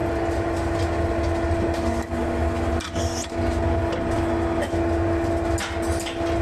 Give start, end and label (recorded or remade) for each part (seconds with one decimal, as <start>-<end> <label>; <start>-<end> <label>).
0.0-6.4 recorded